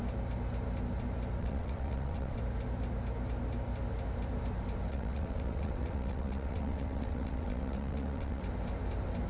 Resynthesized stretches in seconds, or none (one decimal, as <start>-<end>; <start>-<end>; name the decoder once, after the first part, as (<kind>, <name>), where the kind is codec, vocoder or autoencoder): 1.4-2.4 (vocoder, WaveNeXt); 4.9-8.4